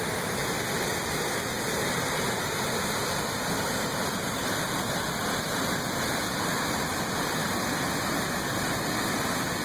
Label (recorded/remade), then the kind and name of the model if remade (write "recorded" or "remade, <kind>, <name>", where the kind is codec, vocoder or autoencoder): recorded